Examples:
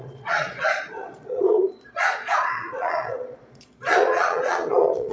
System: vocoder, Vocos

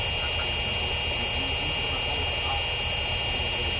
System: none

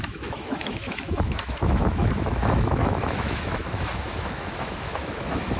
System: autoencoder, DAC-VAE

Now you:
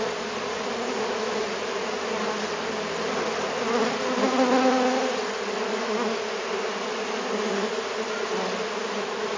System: none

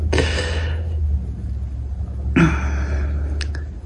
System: none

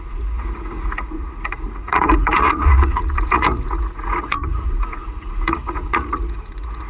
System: vocoder, Vocos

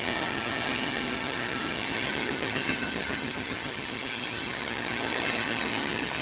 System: vocoder, HiFi-GAN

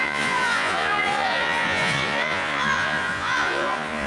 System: vocoder, Vocos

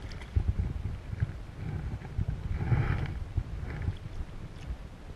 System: none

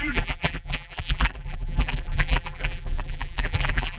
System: vocoder, BigVGAN v2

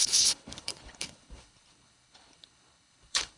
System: codec, HILCodec